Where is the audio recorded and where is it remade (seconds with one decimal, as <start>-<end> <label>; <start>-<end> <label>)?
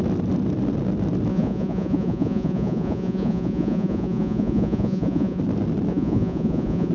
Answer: 0.0-1.3 recorded; 1.3-5.4 remade; 5.4-5.9 recorded; 5.9-6.9 remade